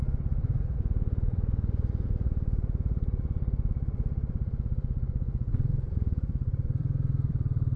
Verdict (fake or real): fake